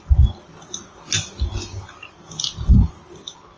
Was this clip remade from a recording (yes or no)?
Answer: no